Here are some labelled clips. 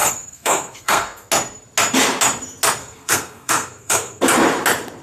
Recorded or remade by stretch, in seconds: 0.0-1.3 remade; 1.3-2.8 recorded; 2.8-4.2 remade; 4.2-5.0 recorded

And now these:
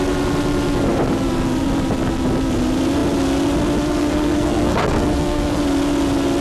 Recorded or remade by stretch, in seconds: 0.0-4.0 recorded; 4.0-5.6 remade; 5.6-6.4 recorded

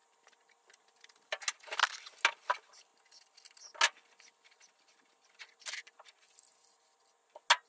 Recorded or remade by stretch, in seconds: 0.0-7.7 recorded

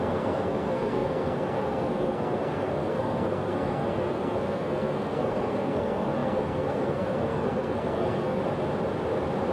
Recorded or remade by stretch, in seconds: 0.0-8.4 remade; 8.4-9.5 recorded

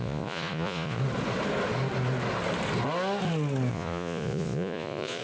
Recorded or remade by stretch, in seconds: 0.0-1.0 remade; 1.0-3.7 recorded; 3.7-5.2 remade

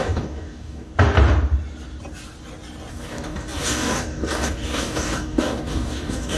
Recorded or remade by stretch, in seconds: 0.0-0.9 remade; 0.9-2.9 recorded; 2.9-6.4 remade